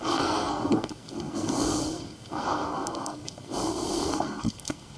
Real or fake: fake